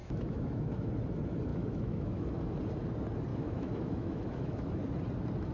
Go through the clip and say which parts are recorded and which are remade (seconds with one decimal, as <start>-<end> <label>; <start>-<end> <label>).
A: 0.0-0.9 remade; 0.9-1.5 recorded; 1.5-2.3 remade; 2.3-3.3 recorded; 3.3-4.8 remade; 4.8-5.5 recorded